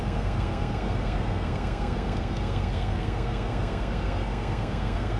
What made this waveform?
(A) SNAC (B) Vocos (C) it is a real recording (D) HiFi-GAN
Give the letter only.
A